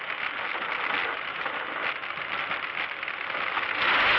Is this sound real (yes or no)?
yes